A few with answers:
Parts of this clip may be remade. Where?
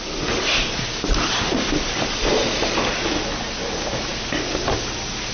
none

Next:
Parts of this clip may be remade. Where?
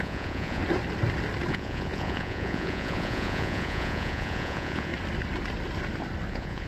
0.0-0.6 (vocoder, Vocos); 1.5-4.9; 6.3-6.7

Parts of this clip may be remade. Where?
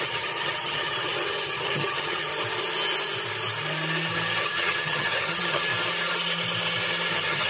0.0-2.3 (vocoder, HiFi-GAN); 4.4-5.7; 7.1-7.5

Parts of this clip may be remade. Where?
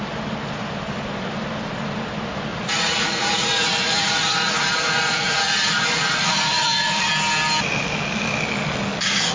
2.5-7.1 (vocoder, Vocos)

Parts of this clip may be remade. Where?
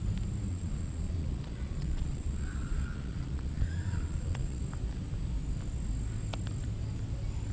0.5-4.6 (vocoder, Vocos)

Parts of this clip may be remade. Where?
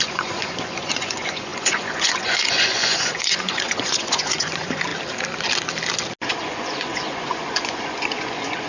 0.0-4.9 (vocoder, Vocos); 6.4-8.7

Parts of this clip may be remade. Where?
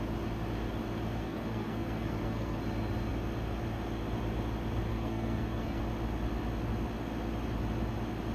1.2-2.6 (codec, SNAC); 4.9-5.8